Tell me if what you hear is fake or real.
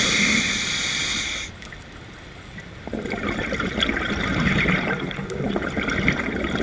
real